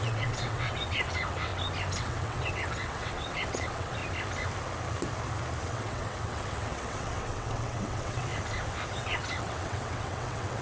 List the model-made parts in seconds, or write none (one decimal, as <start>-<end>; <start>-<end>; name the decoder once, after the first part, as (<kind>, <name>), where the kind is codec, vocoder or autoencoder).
0.0-1.5 (vocoder, WaveNeXt); 2.0-4.0; 5.6-8.3; 9.0-10.6

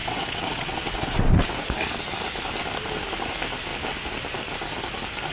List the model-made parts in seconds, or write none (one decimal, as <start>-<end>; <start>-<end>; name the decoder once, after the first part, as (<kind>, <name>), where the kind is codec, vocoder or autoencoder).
0.0-1.4 (vocoder, WaveNeXt)

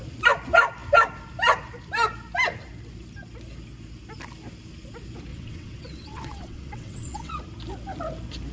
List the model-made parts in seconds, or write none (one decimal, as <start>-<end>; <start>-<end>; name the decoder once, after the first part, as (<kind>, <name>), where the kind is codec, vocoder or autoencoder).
5.3-7.4 (vocoder, WaveNeXt)

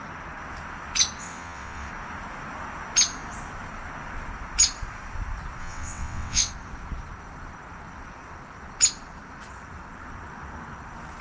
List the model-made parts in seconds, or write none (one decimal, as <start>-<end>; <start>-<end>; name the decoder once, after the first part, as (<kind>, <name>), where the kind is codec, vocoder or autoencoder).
1.2-1.9 (vocoder, WaveNeXt); 5.6-6.5